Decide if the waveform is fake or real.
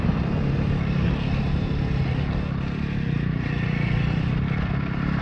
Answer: real